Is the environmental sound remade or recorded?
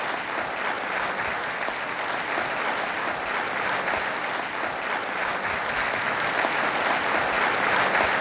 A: recorded